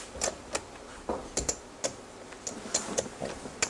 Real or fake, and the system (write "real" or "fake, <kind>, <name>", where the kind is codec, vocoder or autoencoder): real